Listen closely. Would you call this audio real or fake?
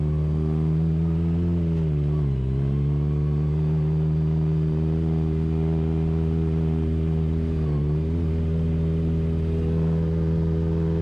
real